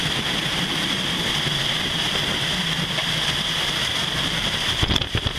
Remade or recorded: remade